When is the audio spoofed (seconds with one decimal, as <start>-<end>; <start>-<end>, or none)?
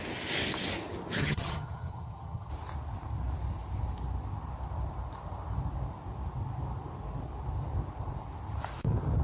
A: 1.2-2.5